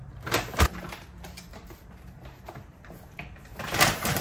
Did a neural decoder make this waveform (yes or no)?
yes